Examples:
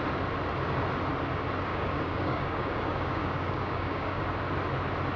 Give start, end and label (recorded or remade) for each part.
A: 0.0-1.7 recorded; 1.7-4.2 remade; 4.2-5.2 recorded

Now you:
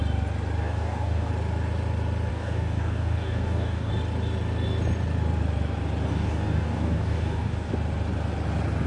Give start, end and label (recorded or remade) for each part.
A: 0.0-0.6 recorded; 0.6-1.3 remade; 1.3-2.3 recorded; 2.3-3.9 remade; 3.9-6.1 recorded; 6.1-7.7 remade; 7.7-8.9 recorded

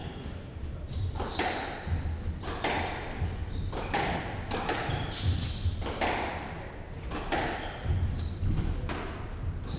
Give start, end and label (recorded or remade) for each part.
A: 0.0-9.8 recorded

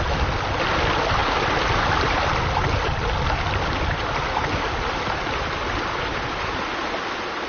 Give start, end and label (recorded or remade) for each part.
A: 0.0-7.5 recorded